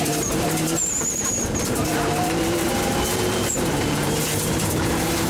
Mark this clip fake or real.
fake